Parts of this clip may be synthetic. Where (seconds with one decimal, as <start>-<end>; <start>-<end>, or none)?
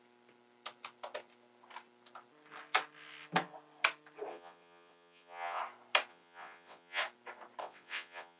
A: 4.3-5.6; 6.1-7.0; 7.6-8.4